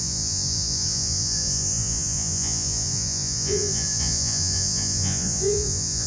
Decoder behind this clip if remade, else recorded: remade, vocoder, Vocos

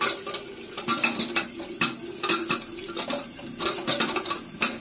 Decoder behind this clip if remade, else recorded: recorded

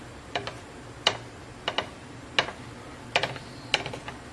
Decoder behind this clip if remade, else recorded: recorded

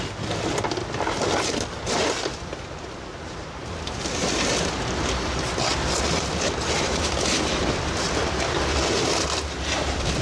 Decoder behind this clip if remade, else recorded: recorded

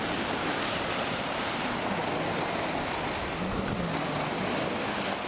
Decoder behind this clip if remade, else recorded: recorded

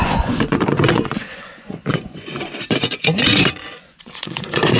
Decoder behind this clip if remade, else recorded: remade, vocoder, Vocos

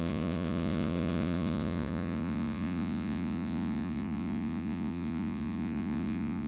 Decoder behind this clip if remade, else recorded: remade, vocoder, Vocos